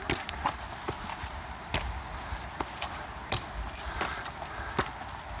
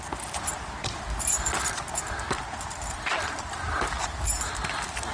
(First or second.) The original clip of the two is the second